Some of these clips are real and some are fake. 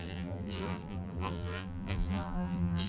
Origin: fake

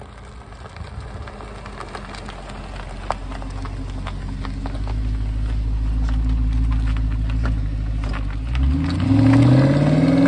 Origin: real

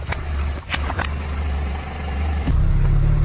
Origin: fake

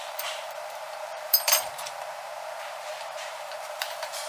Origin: fake